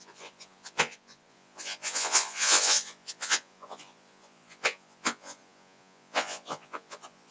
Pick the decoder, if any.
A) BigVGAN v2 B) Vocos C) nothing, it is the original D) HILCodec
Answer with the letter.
B